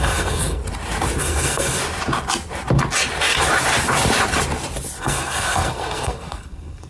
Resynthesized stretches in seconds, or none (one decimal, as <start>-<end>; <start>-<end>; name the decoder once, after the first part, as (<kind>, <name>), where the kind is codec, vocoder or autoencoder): 0.0-0.6 (codec, SNAC); 1.2-1.8; 5.0-6.9